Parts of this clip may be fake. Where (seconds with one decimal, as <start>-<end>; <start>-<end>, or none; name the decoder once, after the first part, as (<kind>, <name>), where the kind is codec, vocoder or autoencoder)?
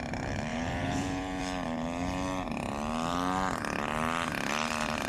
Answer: 0.5-1.4 (vocoder, Vocos)